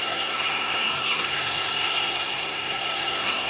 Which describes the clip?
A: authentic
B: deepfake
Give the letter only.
B